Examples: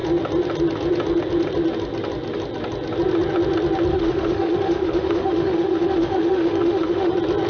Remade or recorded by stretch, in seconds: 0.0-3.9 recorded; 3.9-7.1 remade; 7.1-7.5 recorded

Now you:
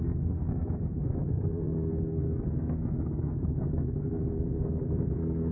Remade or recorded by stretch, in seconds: 0.0-5.5 remade

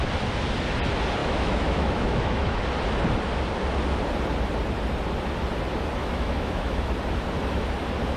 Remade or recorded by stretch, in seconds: 0.0-1.2 recorded; 1.2-2.6 remade; 2.6-6.0 recorded; 6.0-6.9 remade; 6.9-8.2 recorded

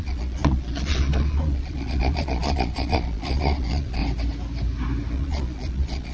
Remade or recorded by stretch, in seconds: 0.0-4.0 remade; 4.0-5.1 recorded; 5.1-6.1 remade

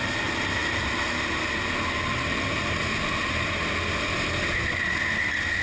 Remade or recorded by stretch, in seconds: 0.0-5.6 recorded

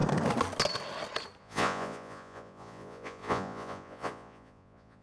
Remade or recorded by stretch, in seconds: 0.0-1.4 recorded; 1.4-5.0 remade